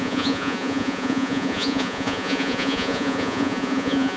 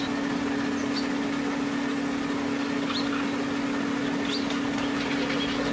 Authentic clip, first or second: second